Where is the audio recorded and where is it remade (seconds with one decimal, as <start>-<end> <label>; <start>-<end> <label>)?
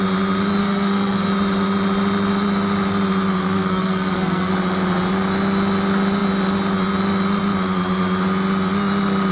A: 0.0-0.6 recorded; 0.6-1.3 remade; 1.3-3.4 recorded; 3.4-4.5 remade; 4.5-9.3 recorded